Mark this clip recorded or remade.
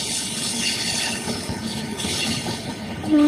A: remade